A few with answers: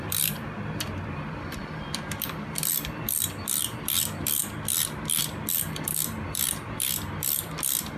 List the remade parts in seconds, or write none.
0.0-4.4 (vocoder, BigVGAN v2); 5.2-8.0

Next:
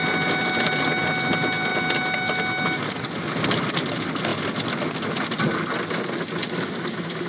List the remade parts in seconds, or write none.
none

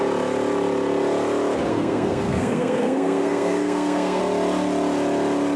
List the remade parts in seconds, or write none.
1.7-4.2 (codec, SNAC)

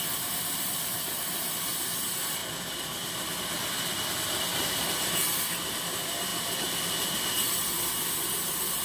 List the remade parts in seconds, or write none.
0.0-2.4 (vocoder, BigVGAN v2); 4.1-8.8

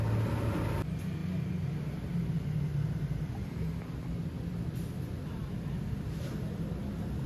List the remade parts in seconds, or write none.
none